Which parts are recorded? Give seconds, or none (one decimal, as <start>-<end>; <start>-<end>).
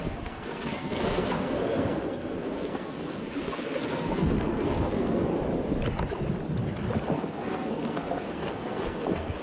5.3-7.0